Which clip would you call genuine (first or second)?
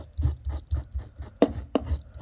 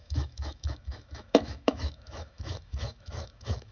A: first